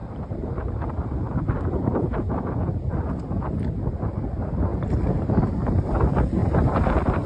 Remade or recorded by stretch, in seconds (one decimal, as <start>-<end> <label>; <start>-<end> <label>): 0.0-2.9 remade; 2.9-6.4 recorded; 6.4-7.3 remade